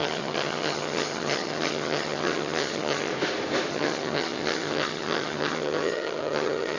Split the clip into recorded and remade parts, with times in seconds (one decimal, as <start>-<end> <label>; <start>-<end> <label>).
0.0-3.1 remade; 3.1-3.7 recorded; 3.7-6.8 remade